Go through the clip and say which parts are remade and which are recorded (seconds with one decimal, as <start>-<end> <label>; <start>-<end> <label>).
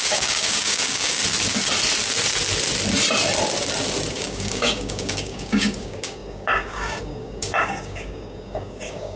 0.0-1.2 remade; 1.2-4.1 recorded; 4.1-9.2 remade